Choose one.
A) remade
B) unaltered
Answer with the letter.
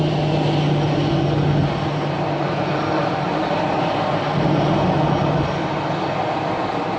B